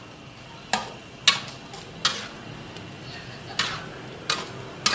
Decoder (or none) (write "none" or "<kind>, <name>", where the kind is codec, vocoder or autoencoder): none